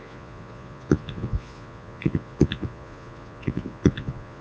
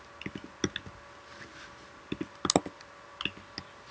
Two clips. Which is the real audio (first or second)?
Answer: second